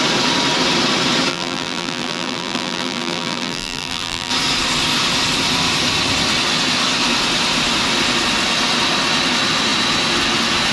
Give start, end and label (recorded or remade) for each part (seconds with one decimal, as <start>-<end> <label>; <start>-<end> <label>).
0.0-1.3 recorded; 1.3-4.3 remade; 4.3-10.7 recorded

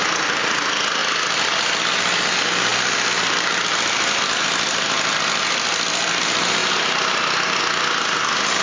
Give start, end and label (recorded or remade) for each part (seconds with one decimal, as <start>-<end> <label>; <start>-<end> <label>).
0.0-8.6 recorded

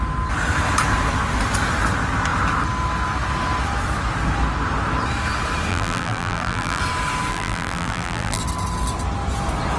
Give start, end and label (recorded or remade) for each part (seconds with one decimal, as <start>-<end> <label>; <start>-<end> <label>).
0.0-5.7 recorded; 5.7-6.8 remade; 6.8-7.3 recorded; 7.3-8.4 remade; 8.4-9.8 recorded